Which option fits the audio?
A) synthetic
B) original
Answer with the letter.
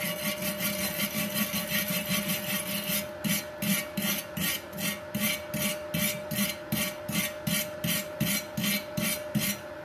B